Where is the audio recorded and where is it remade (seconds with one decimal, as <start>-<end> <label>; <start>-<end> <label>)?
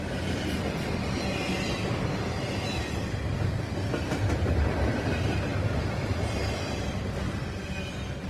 0.0-8.3 recorded